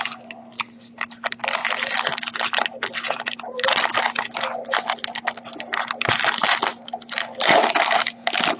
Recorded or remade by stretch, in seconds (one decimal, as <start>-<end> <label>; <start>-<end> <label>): 0.0-8.6 recorded